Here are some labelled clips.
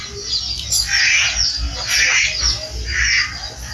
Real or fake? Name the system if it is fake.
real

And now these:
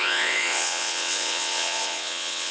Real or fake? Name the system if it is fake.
fake, vocoder, WaveNeXt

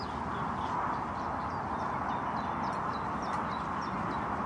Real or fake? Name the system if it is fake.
real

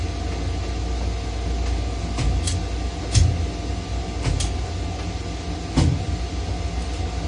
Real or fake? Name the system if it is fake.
real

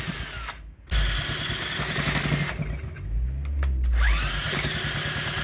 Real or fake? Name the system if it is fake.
real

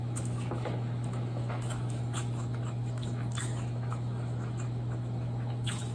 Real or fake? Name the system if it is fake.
fake, autoencoder, DAC-VAE